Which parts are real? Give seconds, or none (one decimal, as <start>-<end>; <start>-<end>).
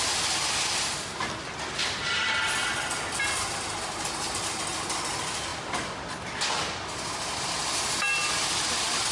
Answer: 0.0-9.1